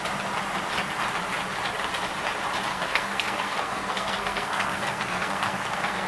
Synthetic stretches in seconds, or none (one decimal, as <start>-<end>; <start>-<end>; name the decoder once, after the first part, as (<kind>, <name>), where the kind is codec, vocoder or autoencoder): 2.7-6.1 (codec, SNAC)